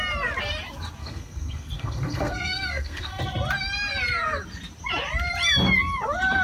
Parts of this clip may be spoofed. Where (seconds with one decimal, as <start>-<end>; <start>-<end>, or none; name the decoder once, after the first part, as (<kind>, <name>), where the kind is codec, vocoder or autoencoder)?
1.0-3.2 (codec, SNAC)